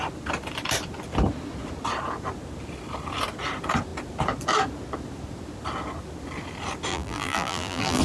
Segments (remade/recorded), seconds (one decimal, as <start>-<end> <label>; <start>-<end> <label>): 0.0-6.9 recorded; 6.9-8.0 remade